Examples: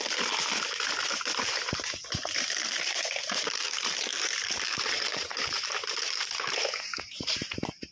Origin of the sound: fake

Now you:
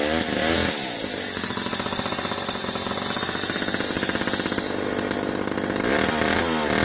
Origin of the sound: real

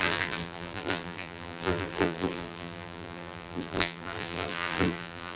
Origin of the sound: fake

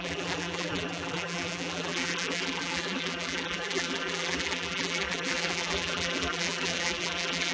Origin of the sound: fake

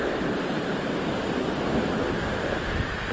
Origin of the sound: real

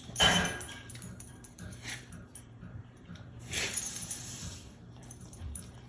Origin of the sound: fake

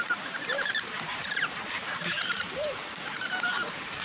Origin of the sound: fake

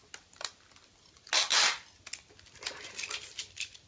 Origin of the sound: real